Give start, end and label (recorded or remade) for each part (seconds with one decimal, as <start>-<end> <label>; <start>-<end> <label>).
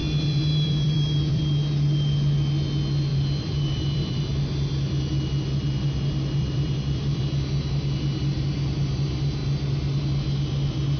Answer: 0.0-1.4 remade; 1.4-3.1 recorded; 3.1-4.2 remade; 4.2-6.4 recorded; 6.4-7.2 remade; 7.2-11.0 recorded